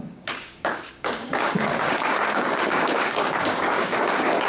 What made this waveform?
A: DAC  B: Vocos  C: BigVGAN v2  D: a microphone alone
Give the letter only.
A